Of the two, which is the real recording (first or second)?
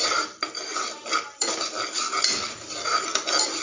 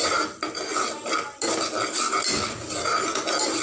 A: second